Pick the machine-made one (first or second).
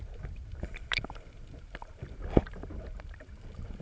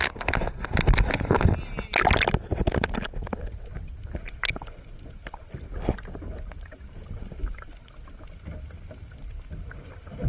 first